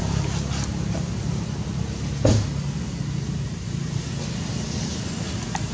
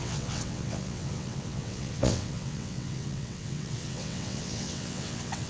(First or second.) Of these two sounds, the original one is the first